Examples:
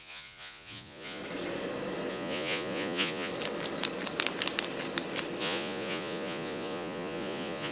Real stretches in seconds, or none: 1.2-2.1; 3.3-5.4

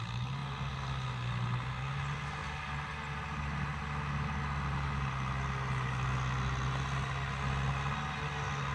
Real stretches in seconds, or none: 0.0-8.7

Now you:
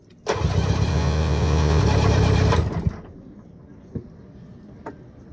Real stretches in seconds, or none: 0.0-0.9; 1.8-5.3